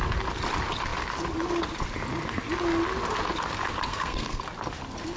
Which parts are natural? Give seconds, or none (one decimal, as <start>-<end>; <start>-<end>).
0.0-3.9; 4.4-5.2